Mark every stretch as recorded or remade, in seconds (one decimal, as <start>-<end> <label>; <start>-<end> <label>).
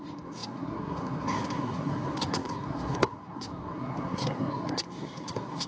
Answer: 0.0-5.7 remade